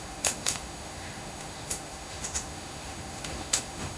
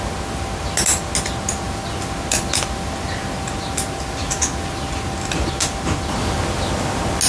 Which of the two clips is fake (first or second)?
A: first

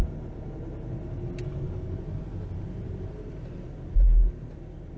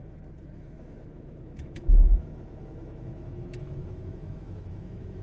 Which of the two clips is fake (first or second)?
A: second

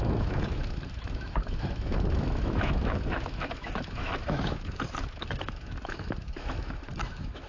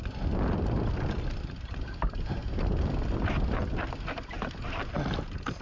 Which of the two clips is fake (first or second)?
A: first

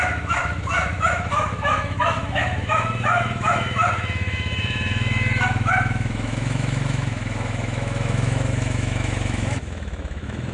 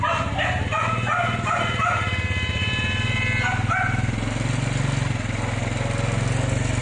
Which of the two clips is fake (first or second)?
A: first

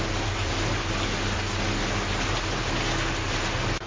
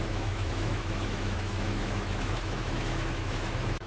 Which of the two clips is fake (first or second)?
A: second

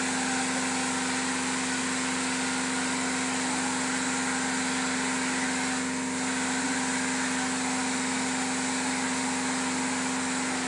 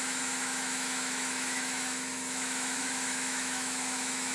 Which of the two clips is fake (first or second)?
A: second